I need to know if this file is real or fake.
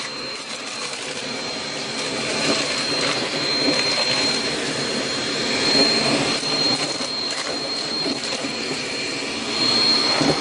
fake